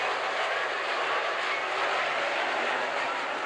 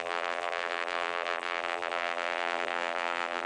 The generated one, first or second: second